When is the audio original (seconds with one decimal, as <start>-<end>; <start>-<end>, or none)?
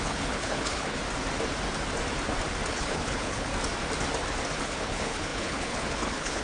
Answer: 1.0-2.7; 3.5-4.6